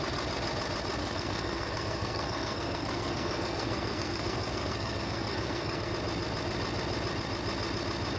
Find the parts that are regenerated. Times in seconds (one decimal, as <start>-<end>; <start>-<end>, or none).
1.0-5.9